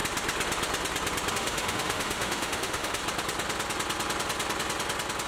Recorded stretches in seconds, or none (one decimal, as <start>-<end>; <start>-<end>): 0.0-1.3; 3.0-5.3